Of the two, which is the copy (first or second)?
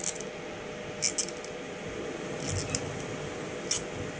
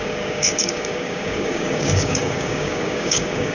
second